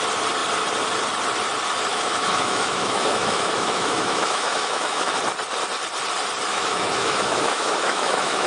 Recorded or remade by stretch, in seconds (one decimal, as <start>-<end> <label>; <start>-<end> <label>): 0.0-1.9 recorded; 1.9-5.2 remade; 5.2-6.5 recorded; 6.5-8.5 remade